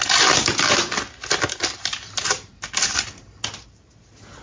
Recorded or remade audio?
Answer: recorded